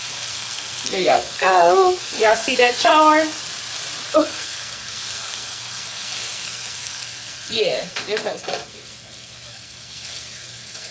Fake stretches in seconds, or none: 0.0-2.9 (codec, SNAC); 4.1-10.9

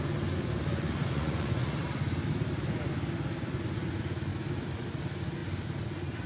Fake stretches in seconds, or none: 0.7-1.8 (vocoder, Vocos)

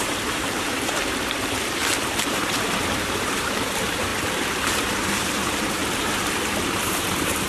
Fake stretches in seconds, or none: 0.0-1.8 (vocoder, BigVGAN v2); 3.0-5.8; 6.4-7.5